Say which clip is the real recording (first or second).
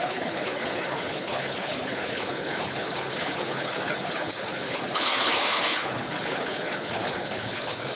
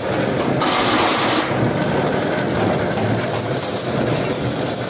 second